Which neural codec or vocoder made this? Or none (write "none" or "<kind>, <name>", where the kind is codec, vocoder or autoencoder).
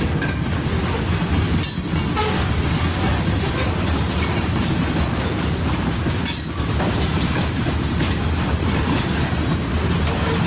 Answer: none